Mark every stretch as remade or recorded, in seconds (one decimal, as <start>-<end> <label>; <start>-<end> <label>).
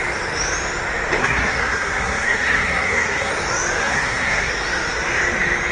0.0-1.2 recorded; 1.2-3.3 remade; 3.3-3.8 recorded; 3.8-4.5 remade; 4.5-5.7 recorded